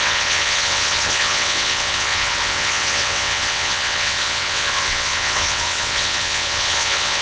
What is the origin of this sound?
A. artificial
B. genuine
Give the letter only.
A